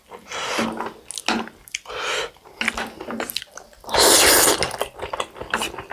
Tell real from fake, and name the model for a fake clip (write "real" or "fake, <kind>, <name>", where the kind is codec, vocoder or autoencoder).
real